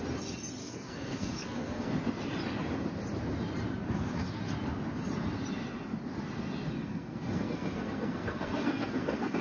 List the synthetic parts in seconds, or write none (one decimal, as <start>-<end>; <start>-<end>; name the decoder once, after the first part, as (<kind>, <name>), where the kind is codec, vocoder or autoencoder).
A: 0.6-1.9 (codec, SNAC); 3.8-4.4; 6.8-9.4